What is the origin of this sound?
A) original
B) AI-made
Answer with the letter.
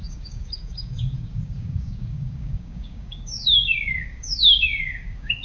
B